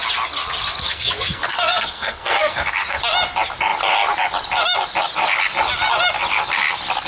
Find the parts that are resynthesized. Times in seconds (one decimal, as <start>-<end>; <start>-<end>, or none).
0.8-3.0